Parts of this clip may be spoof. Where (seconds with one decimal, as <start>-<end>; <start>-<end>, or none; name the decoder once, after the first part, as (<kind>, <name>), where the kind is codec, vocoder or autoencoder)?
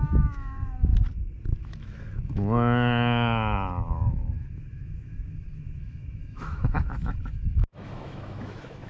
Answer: 0.0-0.9 (autoencoder, DAC-VAE); 1.6-8.9